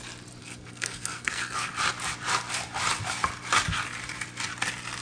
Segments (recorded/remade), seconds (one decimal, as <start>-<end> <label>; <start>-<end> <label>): 0.0-0.4 recorded; 0.4-1.7 remade; 1.7-5.0 recorded